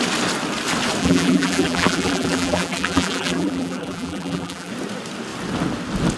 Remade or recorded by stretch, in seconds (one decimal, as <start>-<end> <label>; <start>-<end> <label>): 0.0-1.0 recorded; 1.0-4.7 remade; 4.7-6.2 recorded